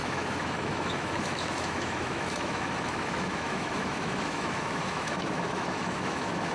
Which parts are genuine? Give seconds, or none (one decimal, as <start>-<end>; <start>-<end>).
none